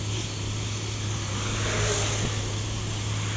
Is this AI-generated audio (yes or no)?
no